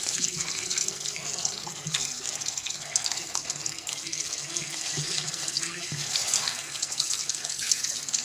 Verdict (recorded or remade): remade